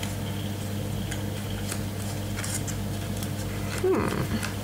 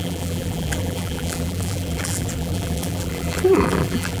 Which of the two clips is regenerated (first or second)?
second